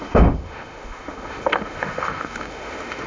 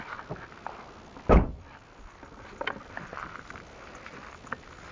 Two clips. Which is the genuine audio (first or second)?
second